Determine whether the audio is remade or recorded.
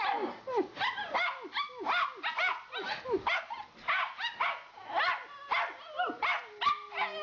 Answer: recorded